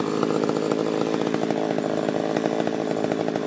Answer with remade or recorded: recorded